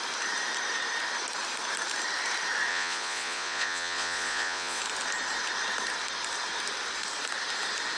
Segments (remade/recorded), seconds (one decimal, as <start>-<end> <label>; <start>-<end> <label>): 0.0-2.7 recorded; 2.7-4.8 remade; 4.8-8.0 recorded